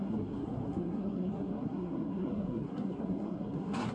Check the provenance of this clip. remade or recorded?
remade